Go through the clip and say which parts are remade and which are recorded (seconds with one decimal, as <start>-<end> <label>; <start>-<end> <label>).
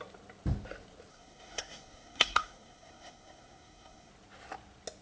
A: 0.0-1.1 recorded; 1.1-4.1 remade; 4.1-5.0 recorded